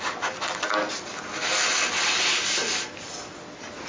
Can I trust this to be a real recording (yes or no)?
yes